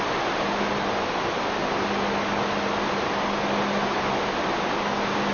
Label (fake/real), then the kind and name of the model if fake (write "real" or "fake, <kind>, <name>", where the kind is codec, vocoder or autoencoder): real